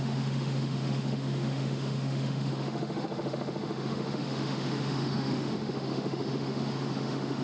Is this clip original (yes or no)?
no